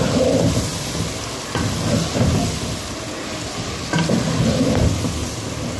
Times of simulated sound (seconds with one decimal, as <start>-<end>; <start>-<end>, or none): none